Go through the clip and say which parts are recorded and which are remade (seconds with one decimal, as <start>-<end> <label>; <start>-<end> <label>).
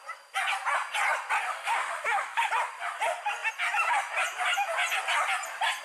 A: 0.0-1.5 recorded; 1.5-2.5 remade; 2.5-5.8 recorded